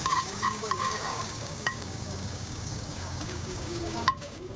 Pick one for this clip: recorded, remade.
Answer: remade